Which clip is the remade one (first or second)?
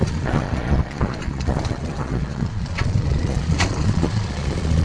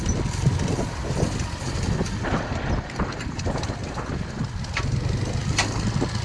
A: first